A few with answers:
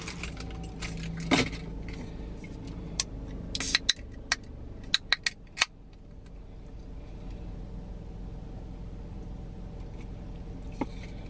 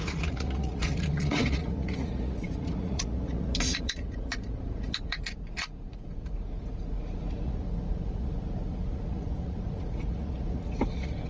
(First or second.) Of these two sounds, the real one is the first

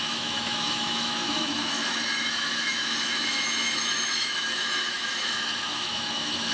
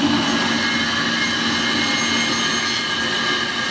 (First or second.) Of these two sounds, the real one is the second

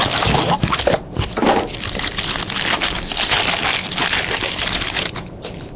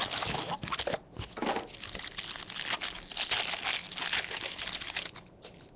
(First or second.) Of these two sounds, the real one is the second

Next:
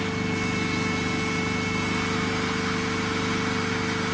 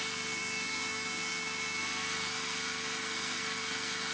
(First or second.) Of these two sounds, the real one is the first